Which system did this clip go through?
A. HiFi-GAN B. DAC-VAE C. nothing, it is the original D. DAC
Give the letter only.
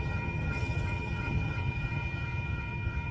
A